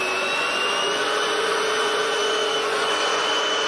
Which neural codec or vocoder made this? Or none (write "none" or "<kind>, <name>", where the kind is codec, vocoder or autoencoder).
vocoder, Vocos